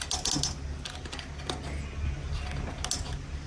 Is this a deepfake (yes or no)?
no